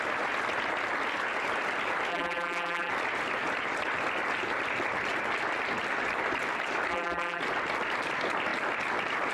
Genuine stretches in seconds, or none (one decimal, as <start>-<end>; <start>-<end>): 0.0-2.1; 2.9-6.9; 7.4-9.3